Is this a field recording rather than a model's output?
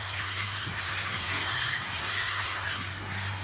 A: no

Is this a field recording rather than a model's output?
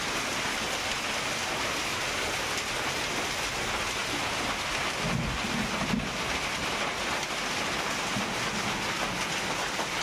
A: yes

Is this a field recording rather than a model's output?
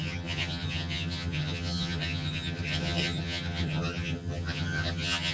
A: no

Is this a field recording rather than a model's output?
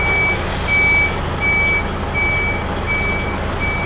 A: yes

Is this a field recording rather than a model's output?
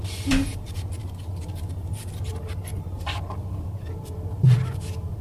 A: no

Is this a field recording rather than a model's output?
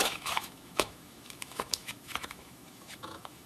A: no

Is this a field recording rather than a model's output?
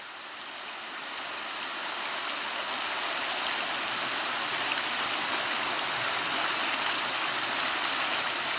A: yes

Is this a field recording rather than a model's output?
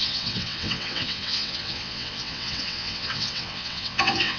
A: no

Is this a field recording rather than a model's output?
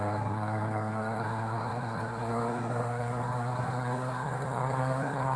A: no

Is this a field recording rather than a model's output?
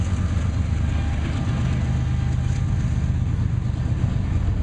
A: yes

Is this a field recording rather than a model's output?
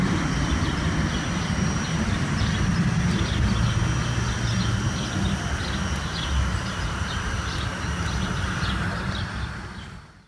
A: yes